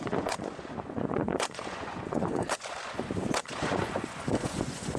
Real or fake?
fake